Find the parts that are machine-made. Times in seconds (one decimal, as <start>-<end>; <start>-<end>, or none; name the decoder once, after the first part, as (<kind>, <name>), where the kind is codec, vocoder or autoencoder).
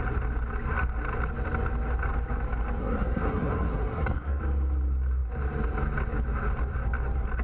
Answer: 2.8-4.4 (codec, SNAC)